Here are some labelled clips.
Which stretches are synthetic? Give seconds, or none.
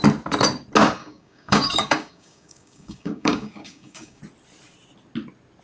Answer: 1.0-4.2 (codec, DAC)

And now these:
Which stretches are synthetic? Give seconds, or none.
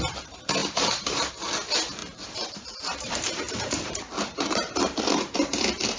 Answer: 0.6-1.3 (vocoder, BigVGAN v2); 2.0-5.6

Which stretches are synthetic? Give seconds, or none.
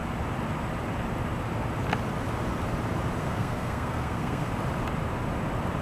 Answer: 3.2-4.5 (codec, SNAC)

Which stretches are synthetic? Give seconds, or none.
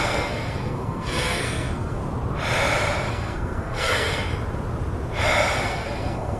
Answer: 0.0-2.0 (codec, SNAC); 3.1-4.3; 5.6-6.4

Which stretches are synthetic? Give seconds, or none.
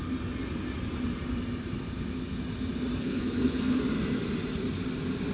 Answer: 3.0-3.8 (codec, SNAC)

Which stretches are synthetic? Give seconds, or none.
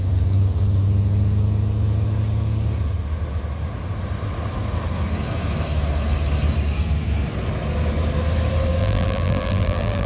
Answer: 8.8-10.1 (vocoder, BigVGAN v2)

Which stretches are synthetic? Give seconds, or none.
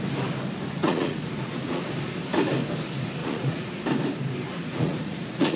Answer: 0.8-1.8 (vocoder, Vocos); 3.2-3.8; 4.6-5.6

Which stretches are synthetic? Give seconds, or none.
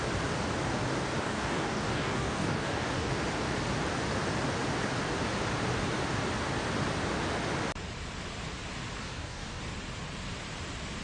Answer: 1.2-3.1 (codec, DAC); 9.0-9.6